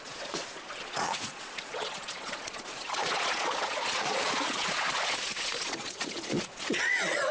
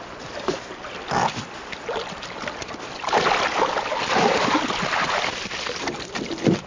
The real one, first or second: second